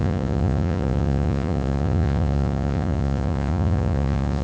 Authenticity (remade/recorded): remade